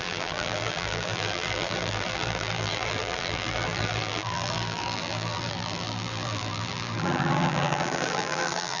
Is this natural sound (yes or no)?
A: no